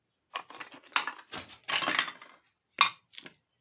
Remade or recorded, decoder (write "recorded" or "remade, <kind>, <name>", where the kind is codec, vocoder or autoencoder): recorded